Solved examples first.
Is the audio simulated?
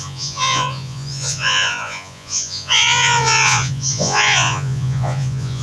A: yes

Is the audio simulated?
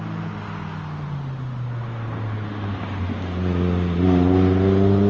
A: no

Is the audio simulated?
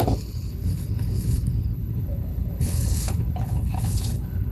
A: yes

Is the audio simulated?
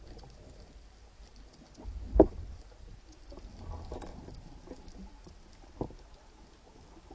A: no